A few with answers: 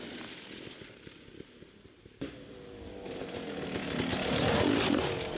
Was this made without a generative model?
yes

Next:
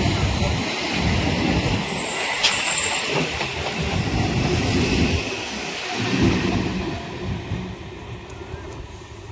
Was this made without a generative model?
yes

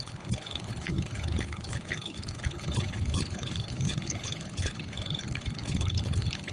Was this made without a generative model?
no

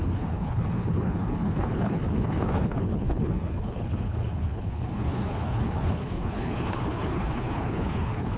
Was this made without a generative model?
no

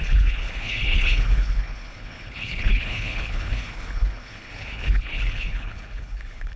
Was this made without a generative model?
no